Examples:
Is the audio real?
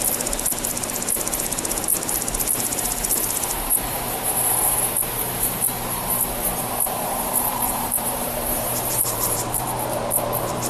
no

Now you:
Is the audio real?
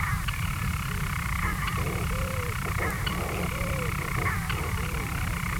no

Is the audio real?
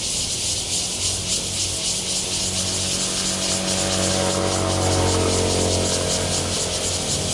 yes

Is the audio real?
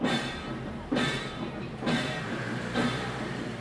no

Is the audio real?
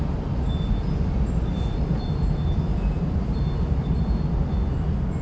yes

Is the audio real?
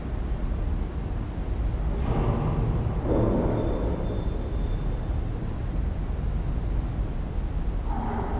yes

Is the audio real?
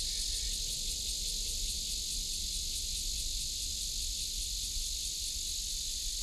yes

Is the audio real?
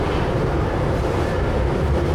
no